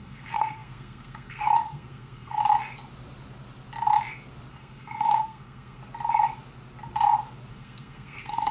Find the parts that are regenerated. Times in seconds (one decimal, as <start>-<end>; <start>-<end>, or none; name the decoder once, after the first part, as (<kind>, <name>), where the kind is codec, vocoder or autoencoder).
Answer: 0.0-2.4 (codec, SNAC); 4.5-5.8; 7.5-8.5